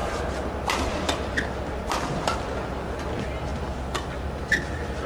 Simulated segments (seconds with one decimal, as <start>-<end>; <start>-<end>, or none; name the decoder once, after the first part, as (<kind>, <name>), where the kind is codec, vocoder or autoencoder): none

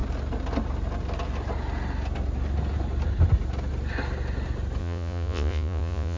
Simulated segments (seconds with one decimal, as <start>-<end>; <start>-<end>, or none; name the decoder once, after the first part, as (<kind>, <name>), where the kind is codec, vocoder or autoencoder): 4.8-6.2 (vocoder, Vocos)